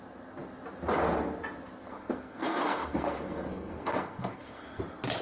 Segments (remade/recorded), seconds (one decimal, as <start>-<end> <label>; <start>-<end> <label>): 0.0-1.8 recorded; 1.8-4.8 remade; 4.8-5.2 recorded